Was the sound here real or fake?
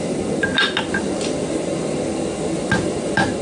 real